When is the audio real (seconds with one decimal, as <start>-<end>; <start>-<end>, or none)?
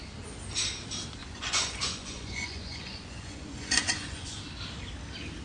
0.0-1.2; 4.4-5.4